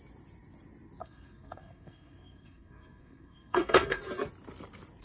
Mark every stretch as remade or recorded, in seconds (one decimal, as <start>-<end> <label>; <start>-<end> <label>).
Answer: 0.0-1.0 recorded; 1.0-4.0 remade; 4.0-5.0 recorded

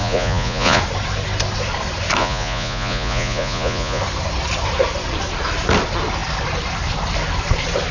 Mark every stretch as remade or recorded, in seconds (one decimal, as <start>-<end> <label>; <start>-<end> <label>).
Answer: 0.0-0.8 remade; 0.8-2.2 recorded; 2.2-4.0 remade; 4.0-7.9 recorded

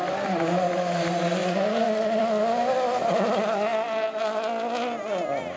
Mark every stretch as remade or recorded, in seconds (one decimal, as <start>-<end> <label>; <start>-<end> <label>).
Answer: 0.0-5.6 recorded

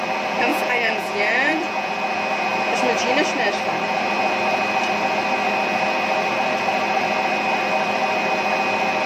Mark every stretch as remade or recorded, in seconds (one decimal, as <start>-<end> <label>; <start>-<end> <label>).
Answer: 0.0-0.5 recorded; 0.5-1.9 remade; 1.9-9.1 recorded

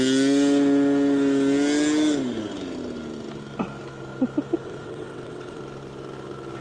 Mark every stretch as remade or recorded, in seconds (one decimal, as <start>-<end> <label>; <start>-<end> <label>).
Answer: 0.0-4.6 recorded; 4.6-5.6 remade; 5.6-6.6 recorded

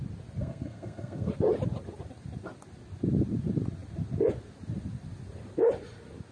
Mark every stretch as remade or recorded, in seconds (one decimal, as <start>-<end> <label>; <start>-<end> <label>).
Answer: 0.0-0.4 recorded; 0.4-1.3 remade; 1.3-6.3 recorded

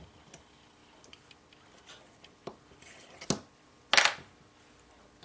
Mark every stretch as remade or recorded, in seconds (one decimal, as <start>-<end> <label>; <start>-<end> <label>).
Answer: 0.0-5.2 recorded

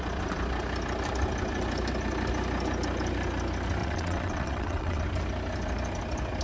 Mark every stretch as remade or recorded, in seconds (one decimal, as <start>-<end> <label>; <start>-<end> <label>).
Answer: 0.0-3.8 recorded; 3.8-5.0 remade; 5.0-6.4 recorded